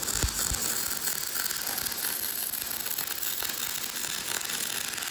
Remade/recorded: recorded